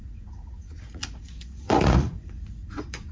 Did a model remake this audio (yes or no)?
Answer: yes